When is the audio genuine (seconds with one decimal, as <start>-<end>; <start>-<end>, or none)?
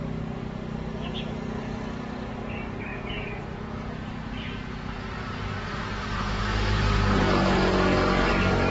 0.0-2.9; 6.4-8.7